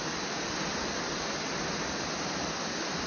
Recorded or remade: recorded